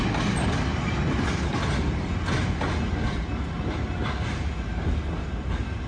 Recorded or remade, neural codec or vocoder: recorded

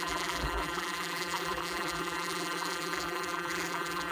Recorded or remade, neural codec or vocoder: remade, vocoder, BigVGAN v2